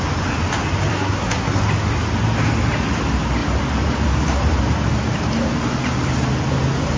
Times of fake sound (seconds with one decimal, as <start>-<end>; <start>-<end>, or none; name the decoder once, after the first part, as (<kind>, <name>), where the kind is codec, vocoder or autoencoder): 0.9-1.6 (codec, SNAC)